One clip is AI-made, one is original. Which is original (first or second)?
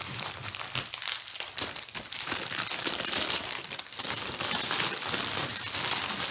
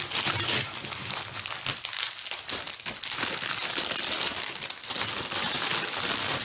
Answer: second